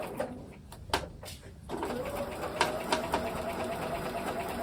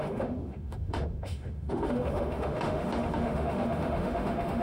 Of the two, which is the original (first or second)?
first